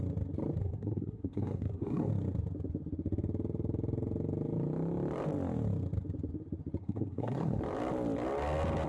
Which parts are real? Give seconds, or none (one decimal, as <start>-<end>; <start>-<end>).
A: 0.0-0.6; 2.1-6.8; 7.6-8.9